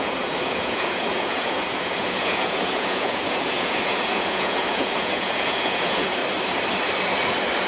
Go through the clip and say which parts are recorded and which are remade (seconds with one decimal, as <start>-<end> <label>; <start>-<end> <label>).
0.0-6.2 remade; 6.2-7.7 recorded